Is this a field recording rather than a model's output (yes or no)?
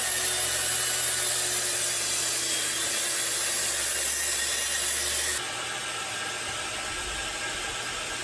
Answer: yes